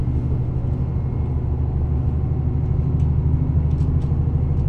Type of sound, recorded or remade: recorded